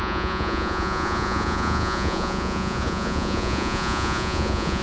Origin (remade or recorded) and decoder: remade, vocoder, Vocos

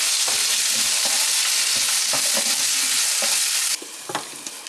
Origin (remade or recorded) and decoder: recorded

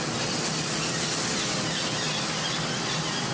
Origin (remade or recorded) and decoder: recorded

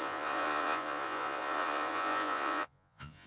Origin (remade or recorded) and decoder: remade, vocoder, Vocos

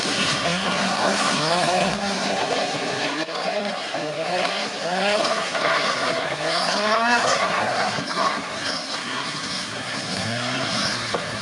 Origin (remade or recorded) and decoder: remade, codec, SNAC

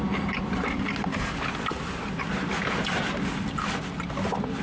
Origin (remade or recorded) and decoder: recorded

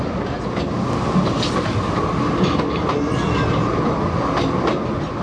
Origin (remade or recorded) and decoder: recorded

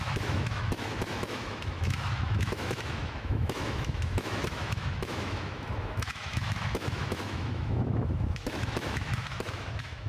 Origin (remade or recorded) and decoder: remade, autoencoder, DAC-VAE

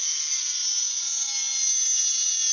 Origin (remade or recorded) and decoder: recorded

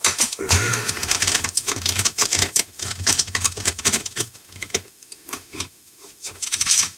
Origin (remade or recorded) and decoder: remade, autoencoder, DAC-VAE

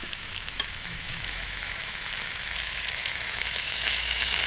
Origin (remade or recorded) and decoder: remade, autoencoder, DAC-VAE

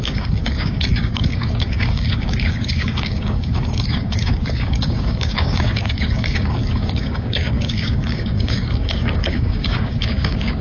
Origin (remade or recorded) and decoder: remade, codec, DAC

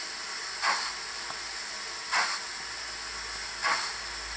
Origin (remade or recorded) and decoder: recorded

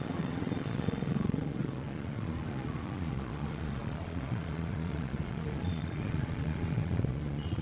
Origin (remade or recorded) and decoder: remade, vocoder, Vocos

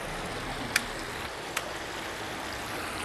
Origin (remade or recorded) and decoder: recorded